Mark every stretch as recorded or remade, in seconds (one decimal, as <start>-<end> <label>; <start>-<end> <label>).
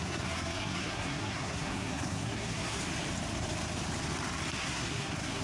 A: 0.0-2.8 remade; 2.8-4.6 recorded; 4.6-5.4 remade